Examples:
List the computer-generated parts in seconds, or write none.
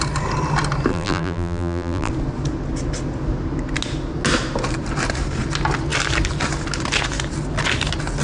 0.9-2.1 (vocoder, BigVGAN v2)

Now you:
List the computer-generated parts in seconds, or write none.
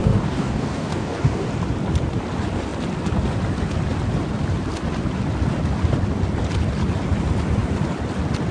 0.0-1.5 (codec, DAC)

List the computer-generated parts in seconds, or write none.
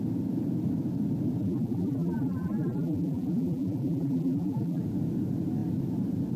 1.4-4.8 (vocoder, BigVGAN v2)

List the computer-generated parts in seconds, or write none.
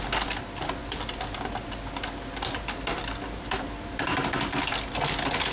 none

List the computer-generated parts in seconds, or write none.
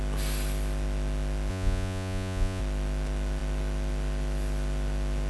1.5-2.6 (vocoder, Vocos)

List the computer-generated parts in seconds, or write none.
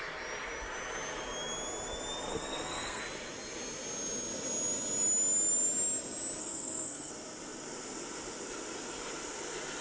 2.3-3.0 (codec, SNAC); 6.4-7.1